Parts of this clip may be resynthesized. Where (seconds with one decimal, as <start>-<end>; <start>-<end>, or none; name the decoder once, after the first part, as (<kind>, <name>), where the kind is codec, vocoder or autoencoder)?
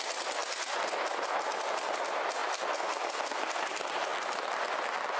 0.0-0.4 (vocoder, BigVGAN v2); 1.6-4.1